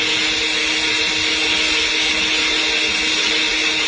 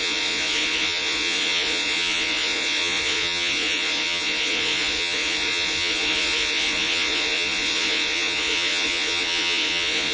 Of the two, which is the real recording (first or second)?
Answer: first